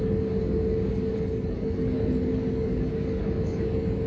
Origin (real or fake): fake